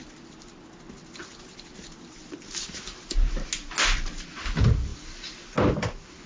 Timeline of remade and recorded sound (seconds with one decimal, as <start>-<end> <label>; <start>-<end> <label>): 0.0-6.3 recorded